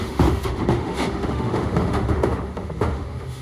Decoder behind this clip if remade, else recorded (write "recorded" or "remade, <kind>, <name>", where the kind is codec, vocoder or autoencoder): remade, autoencoder, DAC-VAE